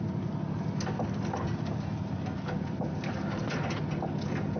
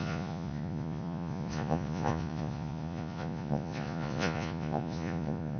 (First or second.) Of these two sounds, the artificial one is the second